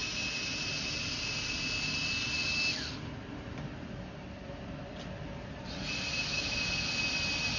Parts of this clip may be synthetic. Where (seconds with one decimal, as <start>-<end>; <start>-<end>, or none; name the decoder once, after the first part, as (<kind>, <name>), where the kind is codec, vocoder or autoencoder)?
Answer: none